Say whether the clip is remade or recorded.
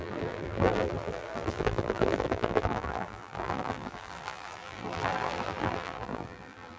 remade